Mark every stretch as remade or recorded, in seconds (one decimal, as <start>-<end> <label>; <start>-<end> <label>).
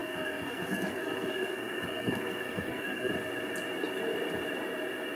0.0-3.1 remade; 3.1-5.1 recorded